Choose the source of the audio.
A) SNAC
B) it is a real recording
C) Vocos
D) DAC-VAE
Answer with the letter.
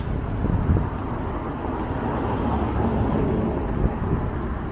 B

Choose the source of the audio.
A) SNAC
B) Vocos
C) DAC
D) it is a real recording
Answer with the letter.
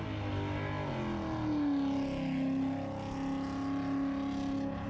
D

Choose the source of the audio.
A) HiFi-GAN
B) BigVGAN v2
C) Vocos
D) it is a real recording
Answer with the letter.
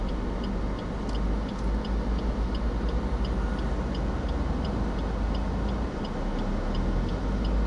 D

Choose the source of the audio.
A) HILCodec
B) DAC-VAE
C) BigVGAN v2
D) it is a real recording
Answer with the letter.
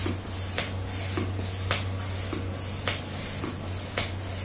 D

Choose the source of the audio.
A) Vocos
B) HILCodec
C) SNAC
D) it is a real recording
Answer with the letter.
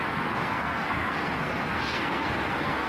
C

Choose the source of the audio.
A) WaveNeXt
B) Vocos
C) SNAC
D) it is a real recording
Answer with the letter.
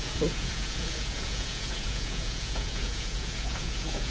B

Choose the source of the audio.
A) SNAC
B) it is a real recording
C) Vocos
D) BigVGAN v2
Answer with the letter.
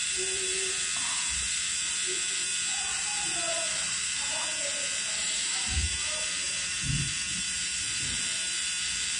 D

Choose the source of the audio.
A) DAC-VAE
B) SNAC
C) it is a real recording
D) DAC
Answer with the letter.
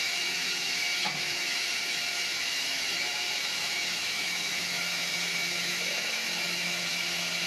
A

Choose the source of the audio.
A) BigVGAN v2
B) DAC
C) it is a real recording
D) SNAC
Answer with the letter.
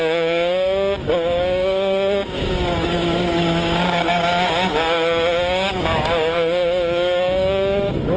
B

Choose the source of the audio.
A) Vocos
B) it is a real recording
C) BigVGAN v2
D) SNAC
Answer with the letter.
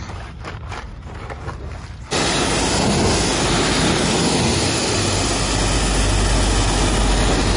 B